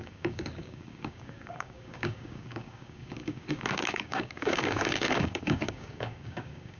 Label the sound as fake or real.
fake